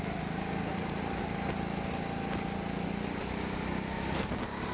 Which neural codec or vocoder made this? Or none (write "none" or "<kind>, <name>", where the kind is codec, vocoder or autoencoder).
none